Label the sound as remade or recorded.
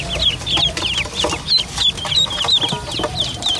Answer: recorded